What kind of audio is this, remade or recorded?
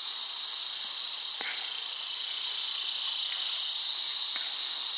recorded